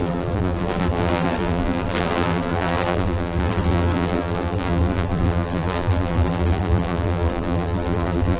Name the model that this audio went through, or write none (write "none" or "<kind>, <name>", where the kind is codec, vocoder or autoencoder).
vocoder, BigVGAN v2